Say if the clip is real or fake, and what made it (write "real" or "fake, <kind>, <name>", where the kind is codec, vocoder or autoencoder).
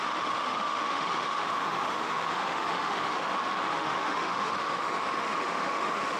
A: fake, autoencoder, DAC-VAE